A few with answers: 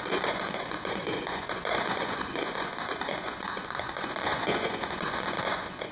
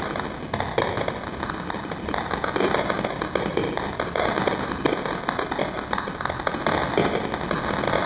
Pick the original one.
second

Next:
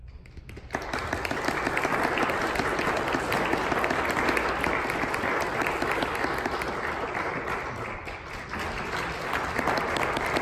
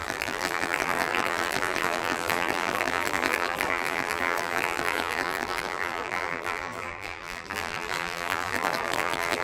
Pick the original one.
first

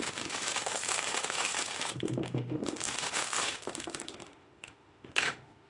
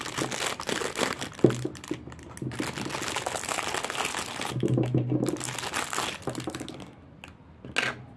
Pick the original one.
second